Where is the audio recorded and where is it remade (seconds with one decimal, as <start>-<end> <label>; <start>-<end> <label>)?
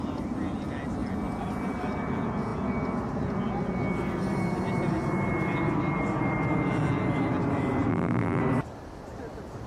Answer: 0.0-7.9 recorded; 7.9-8.4 remade; 8.4-9.7 recorded